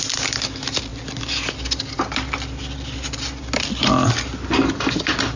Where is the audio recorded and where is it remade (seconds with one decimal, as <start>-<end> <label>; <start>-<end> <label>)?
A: 0.0-5.4 recorded